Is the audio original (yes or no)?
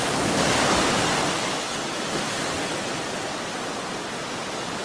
yes